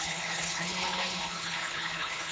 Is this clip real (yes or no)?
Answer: no